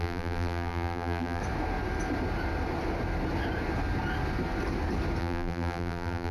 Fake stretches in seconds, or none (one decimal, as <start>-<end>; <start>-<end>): 0.0-1.4; 5.2-6.3